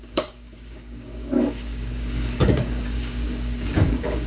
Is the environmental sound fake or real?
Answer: fake